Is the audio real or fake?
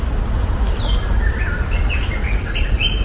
real